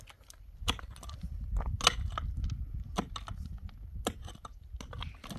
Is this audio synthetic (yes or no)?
no